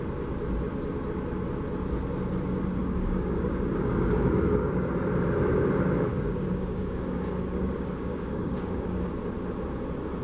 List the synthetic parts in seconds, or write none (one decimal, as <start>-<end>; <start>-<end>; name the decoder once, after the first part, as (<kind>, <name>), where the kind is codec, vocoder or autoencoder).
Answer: 2.8-4.9 (codec, DAC); 6.1-9.1